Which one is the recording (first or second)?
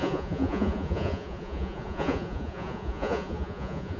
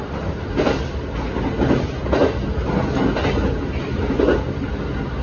second